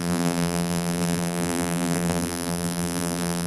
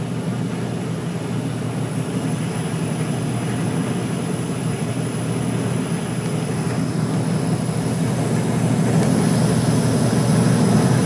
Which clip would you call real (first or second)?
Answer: second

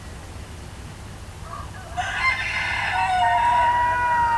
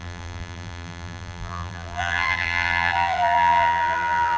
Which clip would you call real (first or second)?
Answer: first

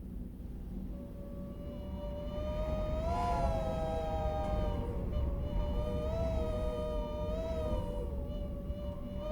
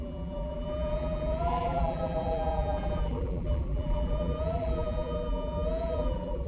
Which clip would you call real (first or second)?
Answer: first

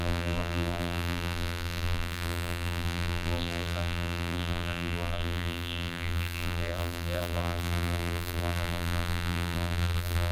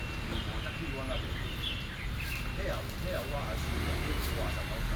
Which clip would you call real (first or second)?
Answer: second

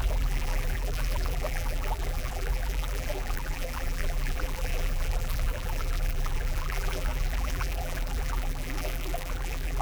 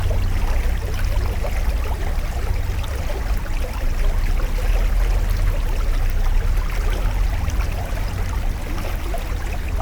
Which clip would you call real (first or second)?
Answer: second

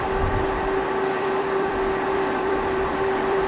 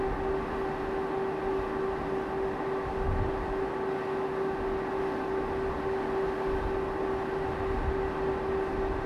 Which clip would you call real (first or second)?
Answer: second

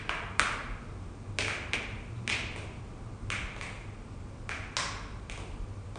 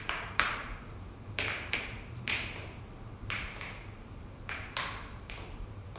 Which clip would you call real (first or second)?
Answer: first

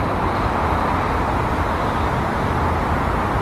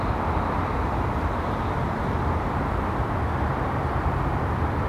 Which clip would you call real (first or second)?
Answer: first